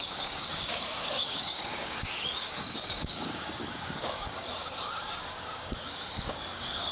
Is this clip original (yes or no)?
no